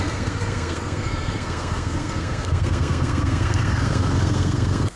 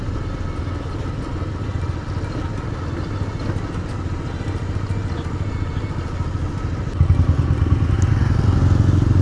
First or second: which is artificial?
first